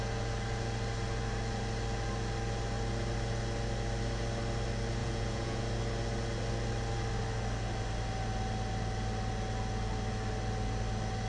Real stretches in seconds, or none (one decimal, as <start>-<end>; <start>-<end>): 0.0-5.0; 5.6-11.3